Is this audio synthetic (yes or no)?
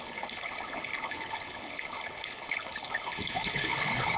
yes